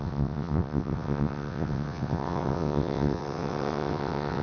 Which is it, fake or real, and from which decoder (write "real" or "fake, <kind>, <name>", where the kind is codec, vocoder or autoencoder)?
fake, vocoder, WaveNeXt